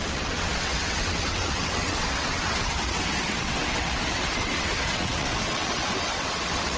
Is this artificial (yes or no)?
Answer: yes